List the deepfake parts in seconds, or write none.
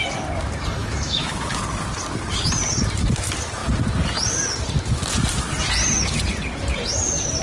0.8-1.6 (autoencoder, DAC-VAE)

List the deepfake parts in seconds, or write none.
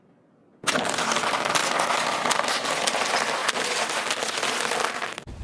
none